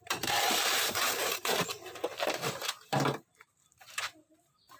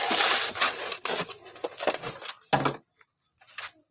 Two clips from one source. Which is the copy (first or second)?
first